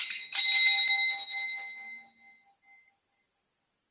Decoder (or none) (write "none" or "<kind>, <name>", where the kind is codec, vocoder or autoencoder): none